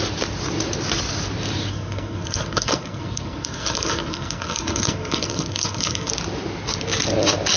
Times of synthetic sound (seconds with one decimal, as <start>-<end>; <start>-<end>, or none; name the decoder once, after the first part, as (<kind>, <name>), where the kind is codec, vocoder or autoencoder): 1.7-6.1 (codec, SNAC)